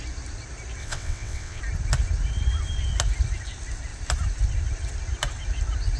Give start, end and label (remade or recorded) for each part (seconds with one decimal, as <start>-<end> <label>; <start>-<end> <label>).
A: 0.0-0.8 recorded; 0.8-1.6 remade; 1.6-6.0 recorded